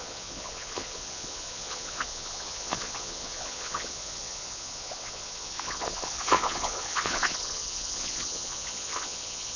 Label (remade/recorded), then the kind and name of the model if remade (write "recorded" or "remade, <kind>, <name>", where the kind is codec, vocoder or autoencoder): remade, vocoder, Vocos